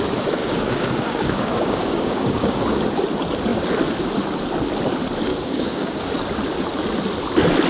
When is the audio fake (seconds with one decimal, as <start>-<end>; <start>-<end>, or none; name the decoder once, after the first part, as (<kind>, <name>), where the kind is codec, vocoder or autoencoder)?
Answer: 0.4-2.8 (codec, DAC); 5.3-6.1